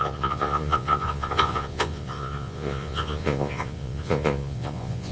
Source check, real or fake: fake